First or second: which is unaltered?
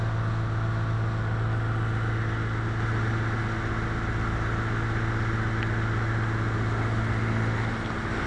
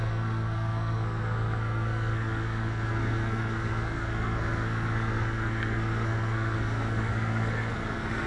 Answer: first